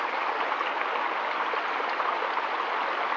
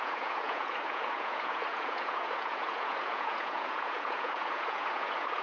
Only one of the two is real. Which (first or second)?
first